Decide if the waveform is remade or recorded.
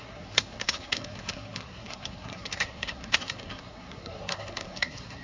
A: remade